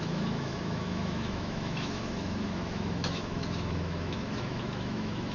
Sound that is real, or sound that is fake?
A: fake